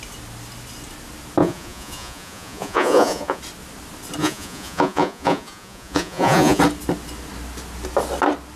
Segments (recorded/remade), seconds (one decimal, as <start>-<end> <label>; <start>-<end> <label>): 0.0-1.4 recorded; 1.4-3.4 remade; 3.4-4.2 recorded; 4.2-6.6 remade; 6.6-8.6 recorded